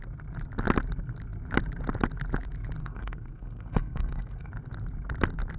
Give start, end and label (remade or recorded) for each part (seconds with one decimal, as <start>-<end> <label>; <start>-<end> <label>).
0.0-2.8 recorded; 2.8-4.5 remade; 4.5-5.6 recorded